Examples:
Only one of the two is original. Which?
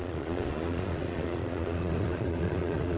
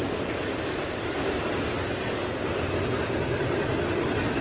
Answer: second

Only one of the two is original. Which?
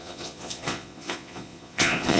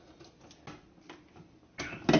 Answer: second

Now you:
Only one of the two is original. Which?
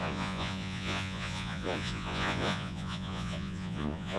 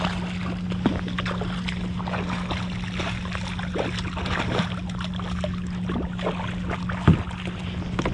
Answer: second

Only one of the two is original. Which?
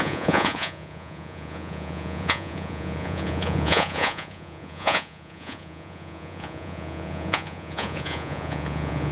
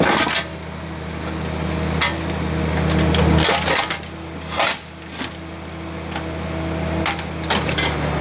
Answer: second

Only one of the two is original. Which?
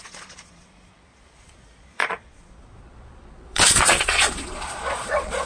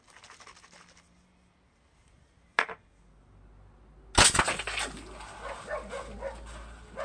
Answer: second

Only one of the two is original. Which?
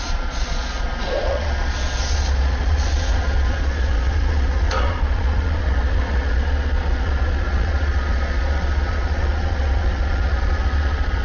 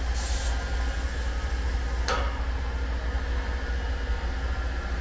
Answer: second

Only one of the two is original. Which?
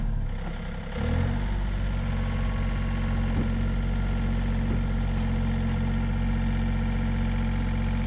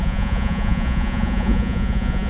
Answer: first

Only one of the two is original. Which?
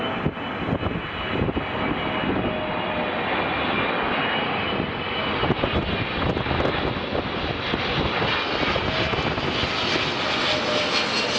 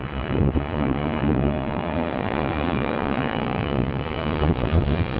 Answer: first